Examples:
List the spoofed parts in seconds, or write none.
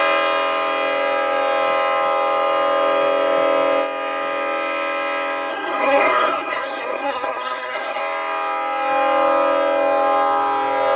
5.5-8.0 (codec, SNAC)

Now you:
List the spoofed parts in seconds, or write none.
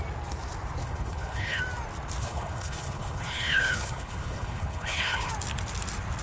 0.8-1.6 (codec, HILCodec); 2.2-5.3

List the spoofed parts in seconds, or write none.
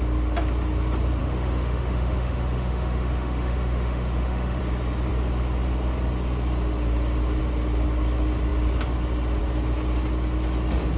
1.2-4.6 (autoencoder, DAC-VAE)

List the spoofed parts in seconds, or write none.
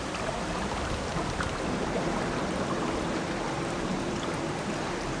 none